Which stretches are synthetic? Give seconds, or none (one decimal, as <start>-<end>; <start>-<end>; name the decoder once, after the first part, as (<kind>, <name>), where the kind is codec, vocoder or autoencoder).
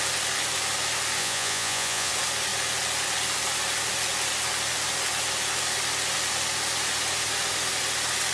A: 1.2-2.1 (vocoder, Vocos)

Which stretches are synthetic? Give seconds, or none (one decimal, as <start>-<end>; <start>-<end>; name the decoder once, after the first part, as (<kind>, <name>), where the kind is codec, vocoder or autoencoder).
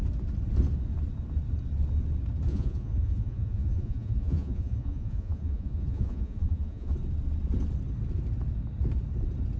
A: 2.5-6.9 (vocoder, Vocos)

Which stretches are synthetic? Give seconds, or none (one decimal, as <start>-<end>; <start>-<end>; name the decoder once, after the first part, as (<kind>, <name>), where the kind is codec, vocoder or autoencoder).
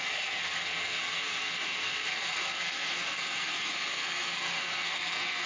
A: 0.0-5.5 (codec, SNAC)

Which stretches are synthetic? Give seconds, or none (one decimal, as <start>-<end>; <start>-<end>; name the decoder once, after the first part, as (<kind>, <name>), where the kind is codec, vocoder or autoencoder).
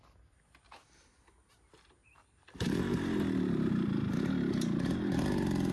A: 2.0-5.2 (vocoder, BigVGAN v2)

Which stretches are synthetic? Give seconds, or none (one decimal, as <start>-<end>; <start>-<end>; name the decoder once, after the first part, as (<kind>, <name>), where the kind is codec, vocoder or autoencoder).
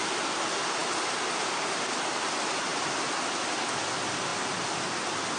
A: none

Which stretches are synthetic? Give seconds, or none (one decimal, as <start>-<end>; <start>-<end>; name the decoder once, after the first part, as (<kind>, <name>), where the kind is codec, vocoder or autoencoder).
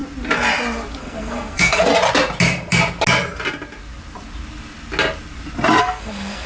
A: 1.0-1.9 (codec, SNAC); 5.8-6.5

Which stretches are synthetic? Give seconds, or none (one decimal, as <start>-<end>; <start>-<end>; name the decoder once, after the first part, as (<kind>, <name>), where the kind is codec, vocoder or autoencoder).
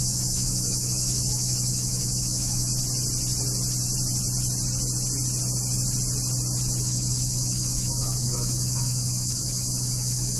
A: 0.0-2.7 (autoencoder, DAC-VAE); 6.8-10.4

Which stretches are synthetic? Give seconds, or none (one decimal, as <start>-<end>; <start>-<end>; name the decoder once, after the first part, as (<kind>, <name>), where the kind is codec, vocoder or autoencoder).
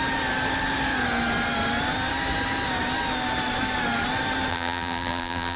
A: 4.5-5.6 (vocoder, BigVGAN v2)